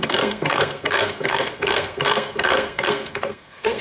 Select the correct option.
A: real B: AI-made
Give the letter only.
B